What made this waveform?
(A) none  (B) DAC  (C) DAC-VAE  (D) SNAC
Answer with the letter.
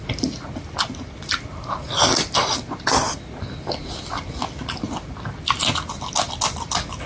A